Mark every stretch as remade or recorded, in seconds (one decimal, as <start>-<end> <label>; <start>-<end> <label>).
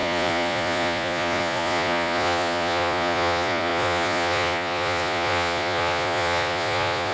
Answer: 0.0-7.1 remade